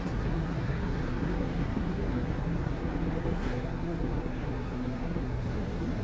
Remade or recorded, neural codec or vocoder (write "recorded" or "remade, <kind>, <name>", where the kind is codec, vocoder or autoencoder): remade, codec, SNAC